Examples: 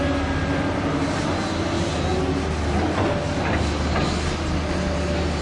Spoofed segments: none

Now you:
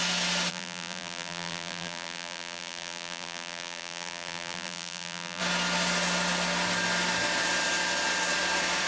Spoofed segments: 0.5-5.4 (vocoder, BigVGAN v2)

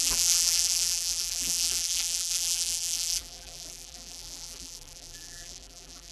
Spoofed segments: 0.0-6.1 (vocoder, BigVGAN v2)

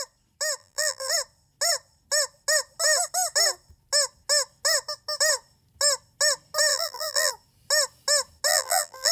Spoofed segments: 0.6-1.1 (vocoder, BigVGAN v2); 6.7-7.3; 8.5-9.1